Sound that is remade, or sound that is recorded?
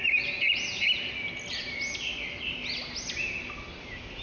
recorded